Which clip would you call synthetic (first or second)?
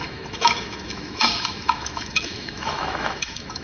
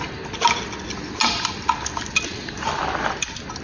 first